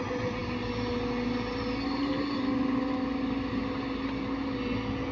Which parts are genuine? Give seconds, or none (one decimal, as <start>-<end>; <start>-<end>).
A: 0.0-5.1